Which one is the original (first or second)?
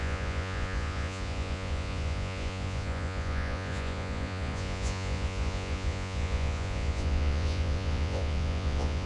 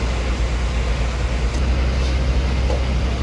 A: second